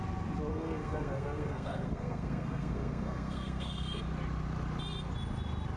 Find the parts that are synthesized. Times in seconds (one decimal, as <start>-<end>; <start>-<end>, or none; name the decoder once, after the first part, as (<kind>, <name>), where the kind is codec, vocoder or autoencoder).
0.5-4.0 (codec, SNAC)

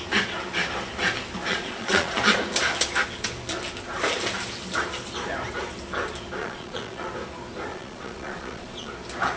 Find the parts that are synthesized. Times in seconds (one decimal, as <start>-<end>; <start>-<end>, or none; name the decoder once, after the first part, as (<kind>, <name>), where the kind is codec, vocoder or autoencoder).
1.5-2.2 (vocoder, Vocos); 6.4-7.1; 7.7-8.9

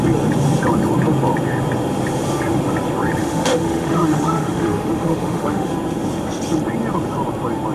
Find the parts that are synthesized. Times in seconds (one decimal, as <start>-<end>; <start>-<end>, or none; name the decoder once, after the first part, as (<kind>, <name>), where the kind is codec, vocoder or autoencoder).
3.2-5.7 (autoencoder, DAC-VAE)

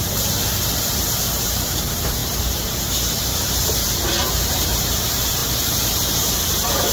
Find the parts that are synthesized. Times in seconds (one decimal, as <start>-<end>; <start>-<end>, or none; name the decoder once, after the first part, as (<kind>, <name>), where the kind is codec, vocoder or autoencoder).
0.0-6.9 (vocoder, BigVGAN v2)